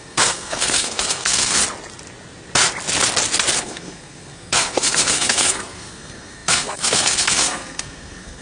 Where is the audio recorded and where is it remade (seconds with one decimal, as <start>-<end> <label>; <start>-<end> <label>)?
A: 0.0-1.6 remade; 1.6-3.6 recorded; 3.6-8.4 remade